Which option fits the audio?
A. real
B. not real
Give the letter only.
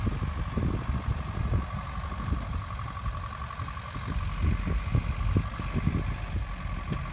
A